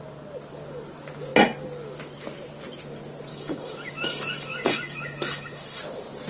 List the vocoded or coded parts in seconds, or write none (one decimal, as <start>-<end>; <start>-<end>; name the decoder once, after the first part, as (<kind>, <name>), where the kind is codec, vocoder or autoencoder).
3.3-5.8 (autoencoder, DAC-VAE)